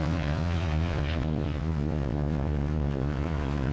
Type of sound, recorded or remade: remade